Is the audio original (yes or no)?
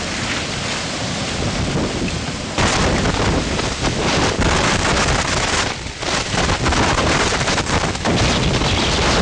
no